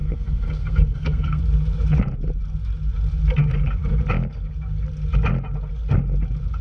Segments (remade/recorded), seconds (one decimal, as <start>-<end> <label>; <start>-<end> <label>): 0.0-1.4 remade; 1.4-6.6 recorded